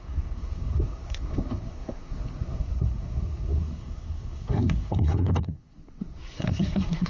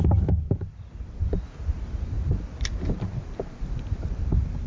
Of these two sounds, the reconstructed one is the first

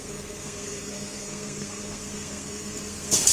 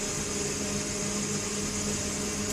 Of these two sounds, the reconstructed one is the first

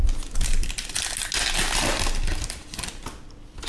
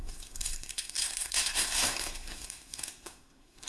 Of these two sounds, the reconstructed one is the second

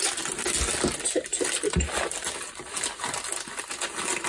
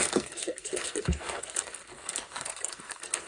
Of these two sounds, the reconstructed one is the second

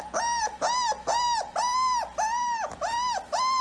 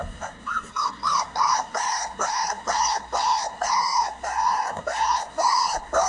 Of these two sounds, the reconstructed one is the second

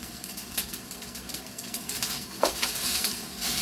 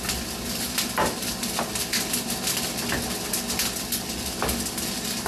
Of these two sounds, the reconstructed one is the first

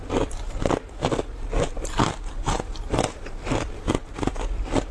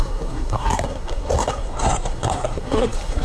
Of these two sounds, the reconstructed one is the second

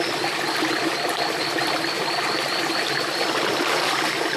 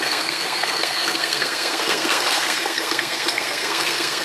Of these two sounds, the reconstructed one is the second